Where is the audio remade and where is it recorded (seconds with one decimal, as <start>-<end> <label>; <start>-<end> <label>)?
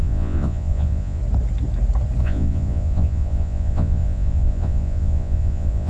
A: 0.0-1.2 remade; 1.2-2.2 recorded; 2.2-5.9 remade